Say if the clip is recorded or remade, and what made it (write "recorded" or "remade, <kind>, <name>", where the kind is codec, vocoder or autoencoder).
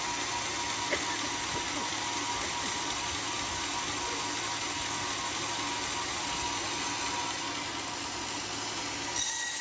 recorded